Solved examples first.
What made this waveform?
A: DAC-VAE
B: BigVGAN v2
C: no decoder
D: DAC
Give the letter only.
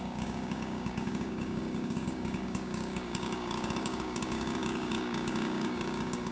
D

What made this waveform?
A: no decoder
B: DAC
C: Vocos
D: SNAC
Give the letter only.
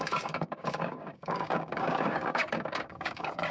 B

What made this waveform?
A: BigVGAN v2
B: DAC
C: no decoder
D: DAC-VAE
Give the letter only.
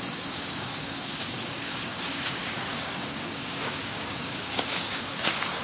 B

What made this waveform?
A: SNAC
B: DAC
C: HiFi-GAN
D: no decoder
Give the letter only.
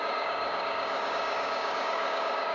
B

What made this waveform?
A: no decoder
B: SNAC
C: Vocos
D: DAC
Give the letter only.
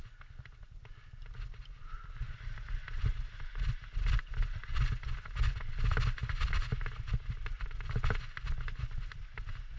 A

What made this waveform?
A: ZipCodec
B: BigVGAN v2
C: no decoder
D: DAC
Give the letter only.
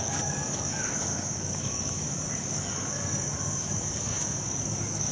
D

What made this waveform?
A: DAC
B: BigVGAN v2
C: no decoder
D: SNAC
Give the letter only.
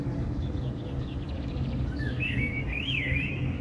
A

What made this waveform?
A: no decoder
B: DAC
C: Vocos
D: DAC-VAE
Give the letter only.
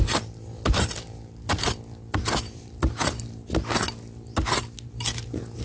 A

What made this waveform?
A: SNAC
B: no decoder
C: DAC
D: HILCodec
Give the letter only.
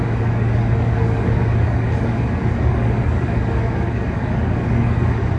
C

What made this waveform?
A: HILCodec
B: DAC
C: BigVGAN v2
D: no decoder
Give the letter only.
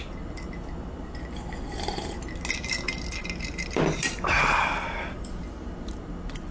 D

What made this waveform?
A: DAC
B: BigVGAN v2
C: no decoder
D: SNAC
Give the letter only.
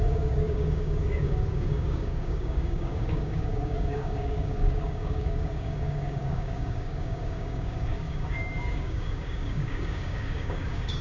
A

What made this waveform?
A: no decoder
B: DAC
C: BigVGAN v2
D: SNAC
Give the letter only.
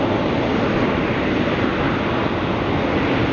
A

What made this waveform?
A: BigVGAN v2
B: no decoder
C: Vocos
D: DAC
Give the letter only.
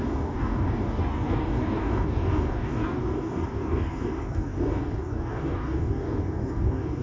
D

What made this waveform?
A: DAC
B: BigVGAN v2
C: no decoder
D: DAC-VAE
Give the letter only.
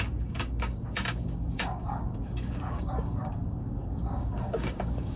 A